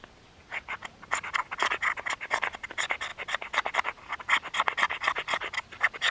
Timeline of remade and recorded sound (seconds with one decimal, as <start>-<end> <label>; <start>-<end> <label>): 0.0-2.6 recorded; 2.6-3.1 remade; 3.1-3.7 recorded; 3.7-6.1 remade